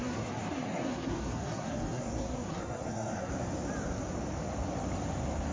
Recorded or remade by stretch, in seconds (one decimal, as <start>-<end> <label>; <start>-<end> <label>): 0.0-3.3 remade; 3.3-5.5 recorded